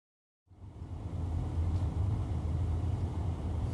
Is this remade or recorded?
recorded